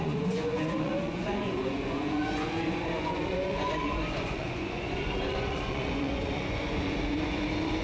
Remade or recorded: remade